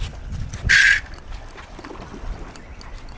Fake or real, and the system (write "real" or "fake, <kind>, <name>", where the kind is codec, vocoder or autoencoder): real